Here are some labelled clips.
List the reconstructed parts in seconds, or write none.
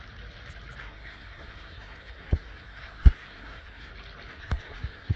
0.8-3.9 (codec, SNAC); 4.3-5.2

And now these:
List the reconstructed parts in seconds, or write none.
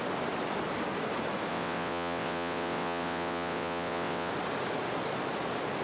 1.5-4.3 (vocoder, WaveNeXt)